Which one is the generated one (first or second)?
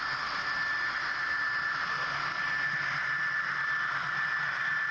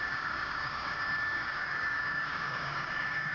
second